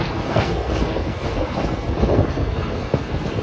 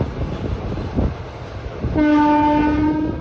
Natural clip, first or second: second